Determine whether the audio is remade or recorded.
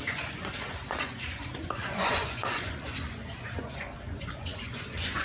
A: remade